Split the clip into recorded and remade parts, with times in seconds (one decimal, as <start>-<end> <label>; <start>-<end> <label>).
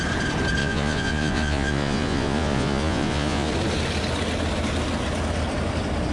0.0-0.6 recorded; 0.6-3.5 remade; 3.5-6.1 recorded